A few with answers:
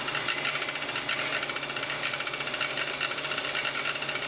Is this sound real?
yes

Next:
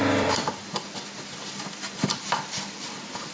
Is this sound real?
no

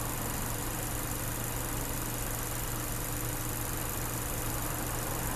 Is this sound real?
yes